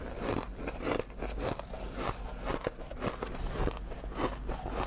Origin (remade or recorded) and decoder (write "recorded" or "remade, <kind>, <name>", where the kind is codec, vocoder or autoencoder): recorded